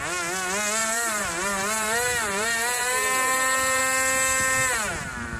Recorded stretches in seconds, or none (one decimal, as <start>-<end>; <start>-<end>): 0.0-0.8; 3.8-5.4